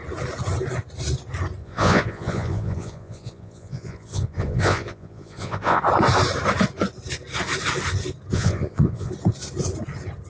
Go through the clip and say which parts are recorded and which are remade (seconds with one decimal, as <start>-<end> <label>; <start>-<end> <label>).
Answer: 0.0-1.6 recorded; 1.6-5.8 remade; 5.8-8.3 recorded; 8.3-9.1 remade; 9.1-10.3 recorded

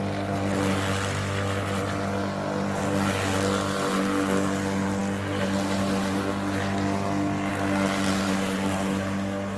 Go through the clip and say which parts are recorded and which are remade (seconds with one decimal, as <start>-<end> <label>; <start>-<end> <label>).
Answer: 0.0-9.6 recorded

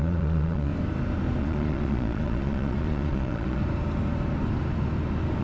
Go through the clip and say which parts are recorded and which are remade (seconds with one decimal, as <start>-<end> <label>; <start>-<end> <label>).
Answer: 0.0-0.7 remade; 0.7-1.4 recorded; 1.4-3.6 remade; 3.6-5.4 recorded

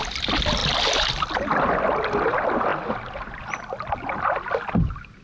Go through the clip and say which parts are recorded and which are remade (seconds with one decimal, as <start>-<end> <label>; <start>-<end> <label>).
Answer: 0.0-5.2 recorded

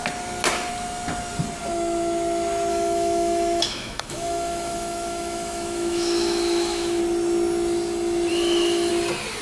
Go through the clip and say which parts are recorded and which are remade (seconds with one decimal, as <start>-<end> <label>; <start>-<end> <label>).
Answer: 0.0-2.7 recorded; 2.7-7.0 remade; 7.0-8.3 recorded; 8.3-8.9 remade; 8.9-9.4 recorded

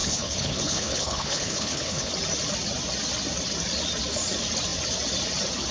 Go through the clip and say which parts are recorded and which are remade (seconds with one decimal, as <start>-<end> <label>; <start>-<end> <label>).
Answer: 0.0-2.1 remade; 2.1-5.7 recorded

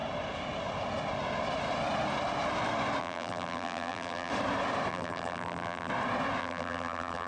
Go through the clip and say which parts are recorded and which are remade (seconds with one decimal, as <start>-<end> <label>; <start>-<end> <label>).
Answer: 0.0-3.0 recorded; 3.0-4.3 remade; 4.3-4.9 recorded; 4.9-5.9 remade; 5.9-6.4 recorded; 6.4-7.3 remade

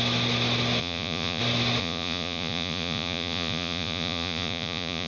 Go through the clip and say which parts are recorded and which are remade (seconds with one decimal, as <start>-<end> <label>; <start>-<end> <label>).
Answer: 0.0-0.8 recorded; 0.8-1.4 remade; 1.4-1.8 recorded; 1.8-5.1 remade